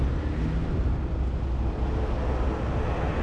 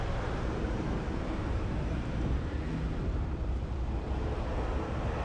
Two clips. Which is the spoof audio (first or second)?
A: second